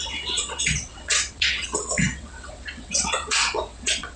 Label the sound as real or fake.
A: fake